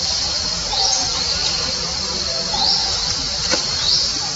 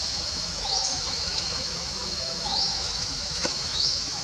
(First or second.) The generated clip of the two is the second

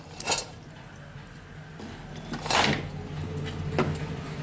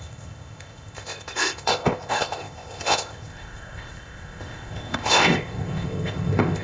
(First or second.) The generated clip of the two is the second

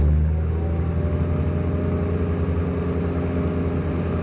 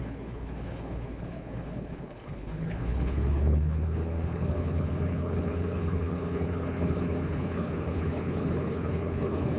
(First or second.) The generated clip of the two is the second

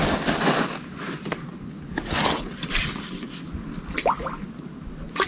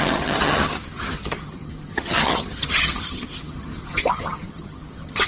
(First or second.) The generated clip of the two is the second